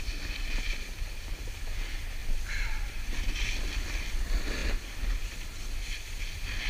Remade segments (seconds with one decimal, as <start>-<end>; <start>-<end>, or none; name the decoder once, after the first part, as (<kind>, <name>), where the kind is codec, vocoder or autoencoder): none